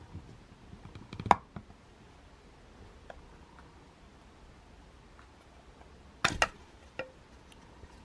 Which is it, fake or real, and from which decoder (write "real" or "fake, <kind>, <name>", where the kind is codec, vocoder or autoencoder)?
real